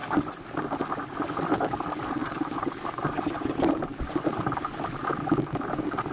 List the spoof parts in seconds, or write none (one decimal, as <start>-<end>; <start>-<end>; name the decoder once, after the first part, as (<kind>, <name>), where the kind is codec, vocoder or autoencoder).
2.2-5.3 (vocoder, BigVGAN v2)

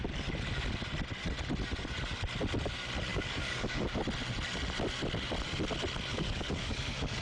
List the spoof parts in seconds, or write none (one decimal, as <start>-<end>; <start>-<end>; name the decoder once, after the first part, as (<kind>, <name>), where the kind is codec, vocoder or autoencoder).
3.1-4.0 (codec, DAC); 6.1-7.2

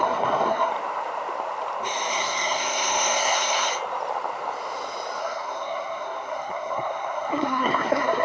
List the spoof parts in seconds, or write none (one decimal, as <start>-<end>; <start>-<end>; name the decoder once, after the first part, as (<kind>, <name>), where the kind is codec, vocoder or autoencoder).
0.0-0.7 (codec, SNAC); 2.1-3.7; 5.2-8.2

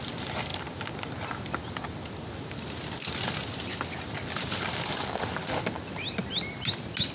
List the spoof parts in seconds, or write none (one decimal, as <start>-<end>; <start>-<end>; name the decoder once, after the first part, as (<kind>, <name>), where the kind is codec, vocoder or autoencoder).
none

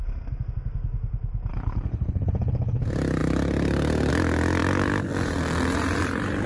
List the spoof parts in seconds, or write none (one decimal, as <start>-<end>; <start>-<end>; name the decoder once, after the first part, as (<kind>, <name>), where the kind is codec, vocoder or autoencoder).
1.5-2.8 (codec, HILCodec)